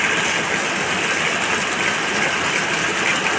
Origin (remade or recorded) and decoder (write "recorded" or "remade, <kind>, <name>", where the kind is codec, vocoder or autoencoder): recorded